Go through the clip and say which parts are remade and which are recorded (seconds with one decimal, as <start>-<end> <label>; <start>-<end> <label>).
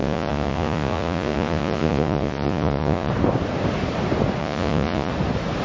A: 0.0-3.1 remade; 3.1-4.4 recorded; 4.4-5.1 remade; 5.1-5.6 recorded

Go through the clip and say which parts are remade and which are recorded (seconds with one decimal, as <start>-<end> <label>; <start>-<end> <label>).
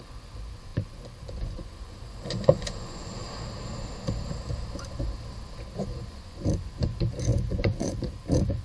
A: 0.0-3.2 remade; 3.2-6.1 recorded; 6.1-8.6 remade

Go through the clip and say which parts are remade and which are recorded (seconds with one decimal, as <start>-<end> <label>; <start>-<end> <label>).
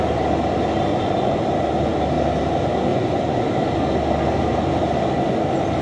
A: 0.0-0.9 recorded; 0.9-1.4 remade; 1.4-2.9 recorded; 2.9-3.4 remade; 3.4-5.8 recorded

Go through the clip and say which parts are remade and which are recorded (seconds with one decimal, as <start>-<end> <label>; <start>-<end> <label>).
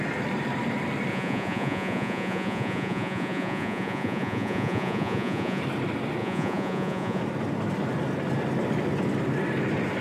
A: 0.0-1.1 recorded; 1.1-5.6 remade; 5.6-6.2 recorded; 6.2-7.2 remade; 7.2-10.0 recorded